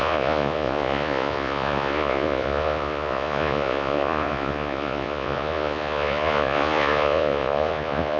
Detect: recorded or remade remade